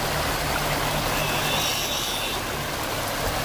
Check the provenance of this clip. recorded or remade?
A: recorded